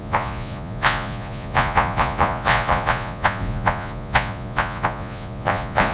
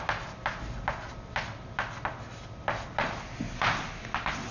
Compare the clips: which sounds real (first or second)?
second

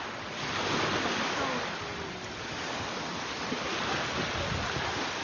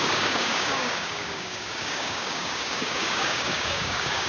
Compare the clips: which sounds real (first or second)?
first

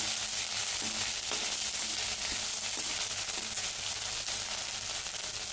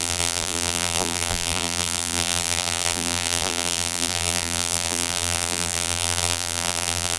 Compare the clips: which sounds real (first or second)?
first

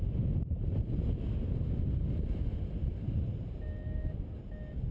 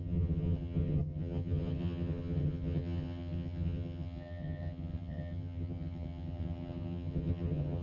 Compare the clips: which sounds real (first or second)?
first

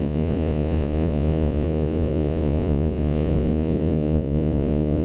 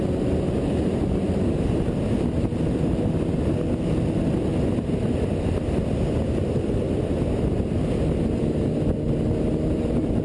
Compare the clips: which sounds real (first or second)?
second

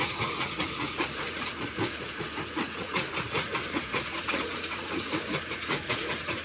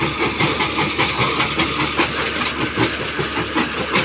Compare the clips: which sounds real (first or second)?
second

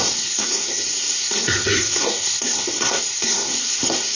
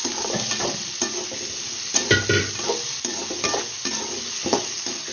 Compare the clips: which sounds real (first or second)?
second